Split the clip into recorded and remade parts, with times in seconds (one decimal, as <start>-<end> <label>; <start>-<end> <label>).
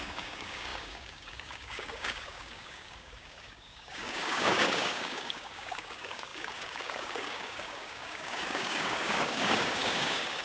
0.0-10.4 remade